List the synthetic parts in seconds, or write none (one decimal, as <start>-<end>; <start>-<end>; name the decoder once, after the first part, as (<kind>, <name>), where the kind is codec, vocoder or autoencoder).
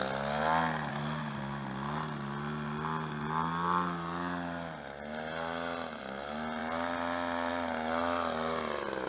0.9-1.4 (codec, SNAC)